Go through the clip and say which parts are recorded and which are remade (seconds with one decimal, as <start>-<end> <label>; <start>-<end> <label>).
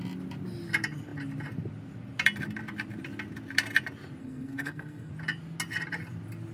0.0-4.2 recorded; 4.2-5.1 remade; 5.1-6.5 recorded